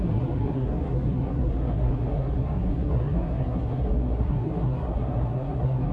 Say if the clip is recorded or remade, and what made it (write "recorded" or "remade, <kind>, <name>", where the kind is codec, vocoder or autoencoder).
remade, codec, SNAC